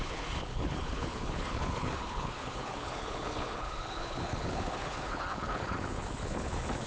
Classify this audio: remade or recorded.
remade